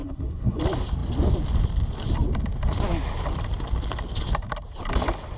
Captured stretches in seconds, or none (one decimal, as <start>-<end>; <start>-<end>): 0.6-5.4